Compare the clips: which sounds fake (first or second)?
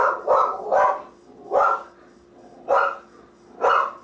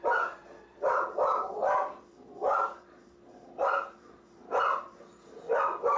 second